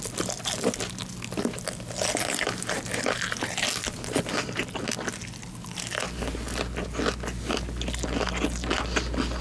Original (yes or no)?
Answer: yes